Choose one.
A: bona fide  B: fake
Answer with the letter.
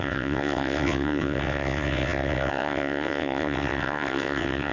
B